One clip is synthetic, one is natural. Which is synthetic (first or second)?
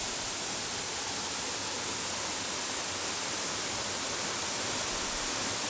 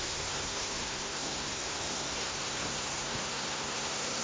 second